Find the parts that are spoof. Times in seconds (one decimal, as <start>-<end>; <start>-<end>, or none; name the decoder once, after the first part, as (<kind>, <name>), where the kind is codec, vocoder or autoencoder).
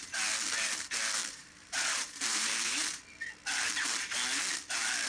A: 1.2-3.0 (vocoder, BigVGAN v2)